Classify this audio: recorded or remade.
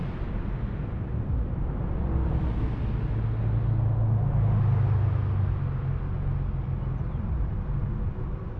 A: recorded